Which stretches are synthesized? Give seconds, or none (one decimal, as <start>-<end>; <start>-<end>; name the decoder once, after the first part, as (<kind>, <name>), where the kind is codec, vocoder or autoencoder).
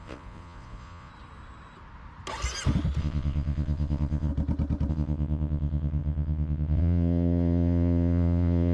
0.0-1.1 (vocoder, Vocos); 3.0-4.3; 4.9-8.7